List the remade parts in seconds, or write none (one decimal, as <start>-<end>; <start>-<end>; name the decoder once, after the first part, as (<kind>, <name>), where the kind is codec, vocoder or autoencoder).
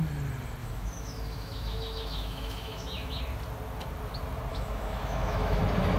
0.6-3.2 (autoencoder, DAC-VAE); 4.5-5.6